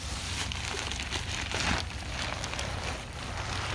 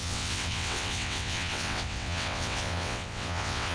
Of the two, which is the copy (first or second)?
second